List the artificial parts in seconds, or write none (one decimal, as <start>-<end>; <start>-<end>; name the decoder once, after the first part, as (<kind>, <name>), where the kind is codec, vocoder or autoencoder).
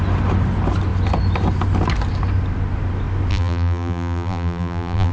3.3-5.1 (vocoder, BigVGAN v2)